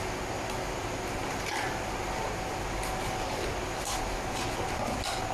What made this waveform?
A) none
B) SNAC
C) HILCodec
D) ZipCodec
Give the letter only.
A